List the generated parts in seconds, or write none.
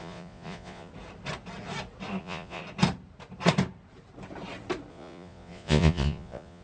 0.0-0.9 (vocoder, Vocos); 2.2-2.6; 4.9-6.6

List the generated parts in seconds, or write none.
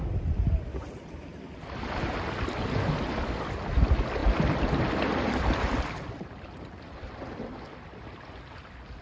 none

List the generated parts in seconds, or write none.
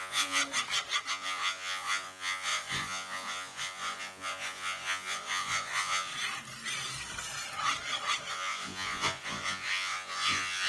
0.0-0.4 (vocoder, Vocos); 1.1-6.1; 8.3-10.7